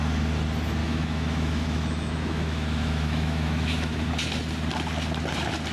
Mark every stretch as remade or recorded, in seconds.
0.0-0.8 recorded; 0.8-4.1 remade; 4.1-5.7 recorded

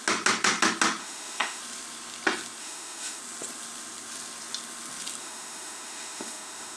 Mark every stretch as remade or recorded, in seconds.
0.0-1.0 recorded; 1.0-1.6 remade; 1.6-2.6 recorded; 2.6-3.2 remade; 3.2-5.2 recorded; 5.2-6.8 remade